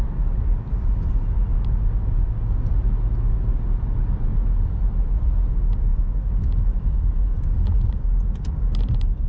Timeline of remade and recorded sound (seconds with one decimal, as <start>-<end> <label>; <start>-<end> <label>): 0.0-9.3 recorded